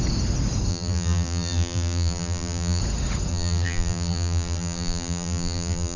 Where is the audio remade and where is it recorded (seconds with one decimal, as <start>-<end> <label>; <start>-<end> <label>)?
0.0-0.7 recorded; 0.7-2.8 remade; 2.8-3.3 recorded; 3.3-6.0 remade

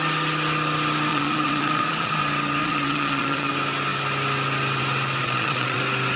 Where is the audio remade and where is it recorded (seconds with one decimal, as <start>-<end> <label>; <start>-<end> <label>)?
0.0-1.1 recorded; 1.1-2.2 remade; 2.2-2.6 recorded; 2.6-3.5 remade; 3.5-5.2 recorded; 5.2-5.8 remade; 5.8-6.2 recorded

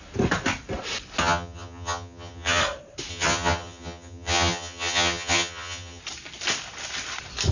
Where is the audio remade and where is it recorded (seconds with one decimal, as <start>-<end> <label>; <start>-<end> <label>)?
0.0-1.2 recorded; 1.2-2.6 remade; 2.6-3.1 recorded; 3.1-6.0 remade; 6.0-7.5 recorded

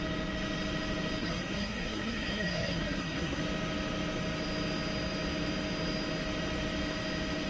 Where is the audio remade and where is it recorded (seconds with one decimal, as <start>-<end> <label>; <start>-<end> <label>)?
0.0-1.2 recorded; 1.2-3.4 remade; 3.4-7.5 recorded

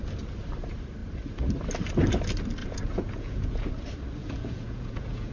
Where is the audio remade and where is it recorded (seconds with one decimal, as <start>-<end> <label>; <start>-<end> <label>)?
0.0-2.6 recorded; 2.6-3.7 remade; 3.7-4.2 recorded; 4.2-5.3 remade

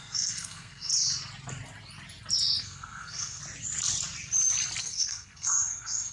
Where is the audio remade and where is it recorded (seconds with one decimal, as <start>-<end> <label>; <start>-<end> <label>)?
0.0-0.9 remade; 0.9-2.6 recorded; 2.6-3.4 remade; 3.4-4.8 recorded; 4.8-6.1 remade